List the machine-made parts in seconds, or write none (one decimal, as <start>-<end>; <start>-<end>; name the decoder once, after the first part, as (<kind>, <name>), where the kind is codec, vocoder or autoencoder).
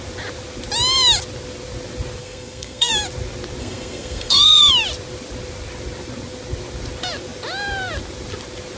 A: 2.2-2.9 (codec, SNAC); 3.6-4.7